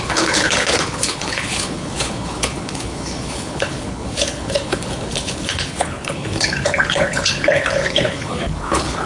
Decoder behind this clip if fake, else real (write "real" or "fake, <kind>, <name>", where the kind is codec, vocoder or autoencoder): fake, codec, HILCodec